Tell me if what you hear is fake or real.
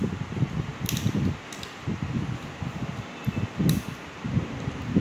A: real